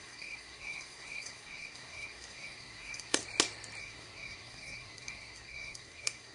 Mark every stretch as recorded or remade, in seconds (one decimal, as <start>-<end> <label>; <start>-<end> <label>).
0.0-3.2 remade; 3.2-3.8 recorded; 3.8-6.3 remade

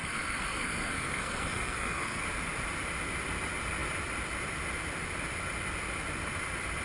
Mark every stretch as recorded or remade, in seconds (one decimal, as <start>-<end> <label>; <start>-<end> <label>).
0.0-2.2 remade; 2.2-6.8 recorded

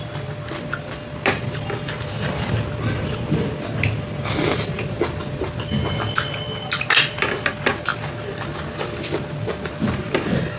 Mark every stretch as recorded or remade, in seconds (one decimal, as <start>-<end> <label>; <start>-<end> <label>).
0.0-10.6 recorded

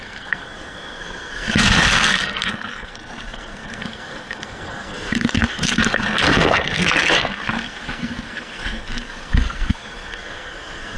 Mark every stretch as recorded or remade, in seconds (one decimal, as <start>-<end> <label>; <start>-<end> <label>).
0.0-11.0 remade